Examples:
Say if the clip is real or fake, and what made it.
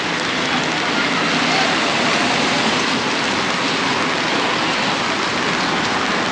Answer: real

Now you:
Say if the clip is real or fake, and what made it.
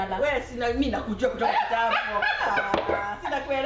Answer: real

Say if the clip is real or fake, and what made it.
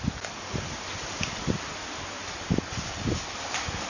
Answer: real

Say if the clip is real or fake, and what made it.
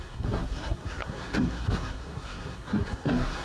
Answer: fake, codec, SNAC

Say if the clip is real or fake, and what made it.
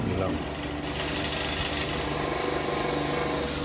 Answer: real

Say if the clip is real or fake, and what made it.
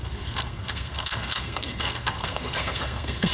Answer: fake, codec, SNAC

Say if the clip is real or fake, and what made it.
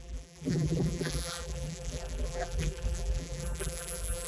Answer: fake, vocoder, BigVGAN v2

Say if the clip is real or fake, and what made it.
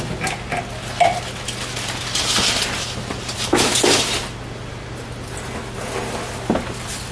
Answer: real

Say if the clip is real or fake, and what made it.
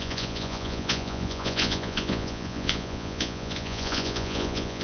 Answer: fake, vocoder, Vocos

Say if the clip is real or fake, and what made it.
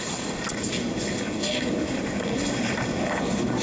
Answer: real